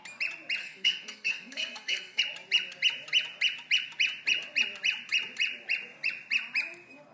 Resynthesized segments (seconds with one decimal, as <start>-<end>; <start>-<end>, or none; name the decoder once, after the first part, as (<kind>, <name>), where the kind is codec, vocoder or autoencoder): 0.6-2.2 (codec, SNAC)